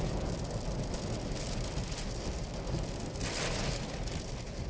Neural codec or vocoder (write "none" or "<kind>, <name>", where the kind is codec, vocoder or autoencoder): none